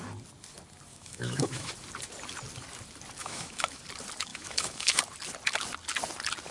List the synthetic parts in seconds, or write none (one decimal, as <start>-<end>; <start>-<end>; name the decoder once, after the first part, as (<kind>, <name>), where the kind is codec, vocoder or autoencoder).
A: 0.9-1.7 (autoencoder, DAC-VAE); 3.2-3.8; 4.3-5.0